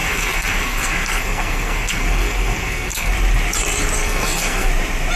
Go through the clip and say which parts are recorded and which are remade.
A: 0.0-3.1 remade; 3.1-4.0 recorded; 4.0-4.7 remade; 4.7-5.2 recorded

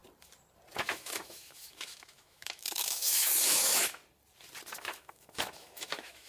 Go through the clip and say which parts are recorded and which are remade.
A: 0.0-0.8 recorded; 0.8-4.0 remade; 4.0-4.8 recorded; 4.8-6.3 remade

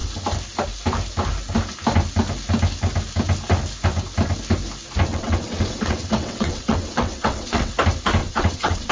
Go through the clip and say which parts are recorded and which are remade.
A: 0.0-5.1 recorded; 5.1-7.7 remade; 7.7-8.2 recorded; 8.2-8.9 remade

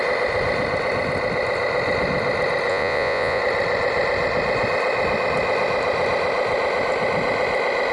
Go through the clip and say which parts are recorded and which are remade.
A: 0.0-2.7 recorded; 2.7-3.4 remade; 3.4-7.9 recorded

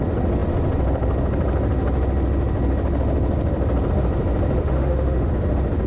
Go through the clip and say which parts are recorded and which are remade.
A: 0.0-4.6 recorded; 4.6-5.3 remade; 5.3-5.9 recorded

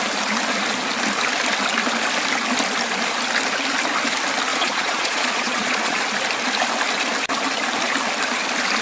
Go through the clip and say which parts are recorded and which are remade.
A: 0.0-4.5 recorded; 4.5-6.0 remade; 6.0-8.8 recorded